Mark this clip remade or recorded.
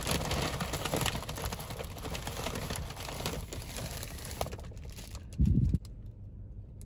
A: recorded